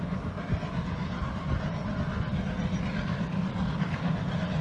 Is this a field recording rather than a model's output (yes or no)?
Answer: yes